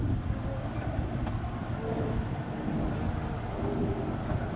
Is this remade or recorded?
recorded